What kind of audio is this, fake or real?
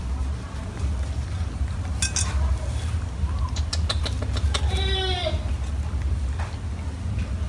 real